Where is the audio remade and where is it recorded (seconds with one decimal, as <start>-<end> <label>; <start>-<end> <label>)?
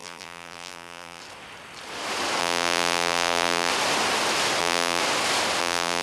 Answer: 0.0-1.2 remade; 1.2-2.4 recorded; 2.4-3.7 remade; 3.7-4.6 recorded; 4.6-5.0 remade; 5.0-5.6 recorded; 5.6-6.0 remade